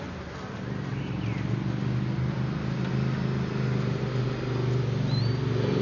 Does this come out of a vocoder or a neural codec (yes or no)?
no